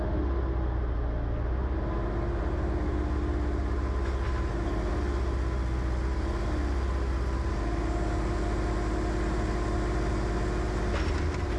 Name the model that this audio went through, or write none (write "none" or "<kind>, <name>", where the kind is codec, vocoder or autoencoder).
none